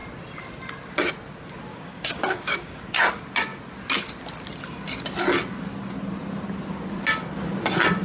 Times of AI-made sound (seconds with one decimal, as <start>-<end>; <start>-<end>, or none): 1.7-2.8